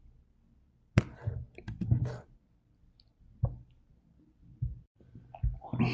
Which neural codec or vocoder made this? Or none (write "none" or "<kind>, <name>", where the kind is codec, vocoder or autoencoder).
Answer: none